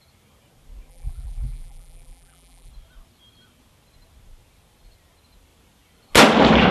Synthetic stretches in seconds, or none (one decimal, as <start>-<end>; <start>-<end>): 0.9-2.7